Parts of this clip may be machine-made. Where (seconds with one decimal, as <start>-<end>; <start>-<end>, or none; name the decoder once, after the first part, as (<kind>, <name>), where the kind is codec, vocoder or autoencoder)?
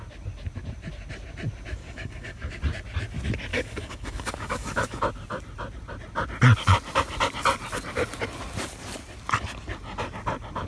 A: 1.8-2.6 (codec, DAC); 3.5-5.0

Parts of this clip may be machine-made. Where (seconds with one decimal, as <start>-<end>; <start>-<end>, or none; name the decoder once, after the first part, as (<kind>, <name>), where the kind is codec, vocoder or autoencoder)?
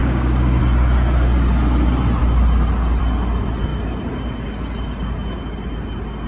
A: 0.0-0.6 (codec, DAC)